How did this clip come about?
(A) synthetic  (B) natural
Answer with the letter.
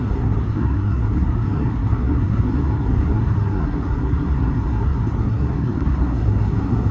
A